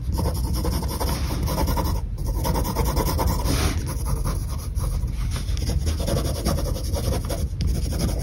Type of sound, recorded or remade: recorded